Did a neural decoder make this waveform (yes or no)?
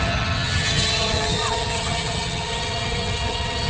yes